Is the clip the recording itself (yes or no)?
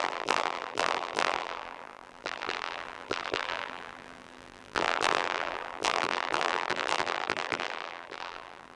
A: no